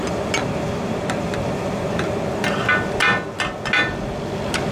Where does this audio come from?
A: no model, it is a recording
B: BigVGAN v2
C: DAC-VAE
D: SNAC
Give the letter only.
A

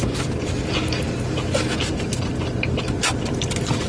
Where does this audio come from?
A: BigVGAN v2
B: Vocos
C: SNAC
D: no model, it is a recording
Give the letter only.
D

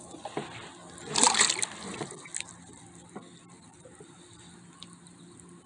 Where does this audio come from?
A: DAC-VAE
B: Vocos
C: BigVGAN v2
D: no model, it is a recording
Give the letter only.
D